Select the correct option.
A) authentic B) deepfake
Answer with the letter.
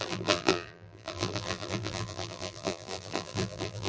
B